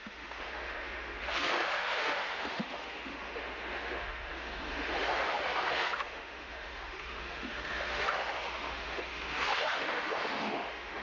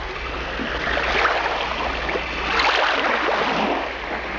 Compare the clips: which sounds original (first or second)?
second